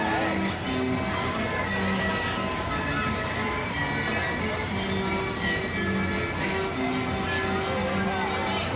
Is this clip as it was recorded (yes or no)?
yes